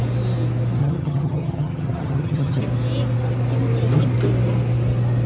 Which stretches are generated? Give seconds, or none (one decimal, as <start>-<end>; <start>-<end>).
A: 0.8-2.6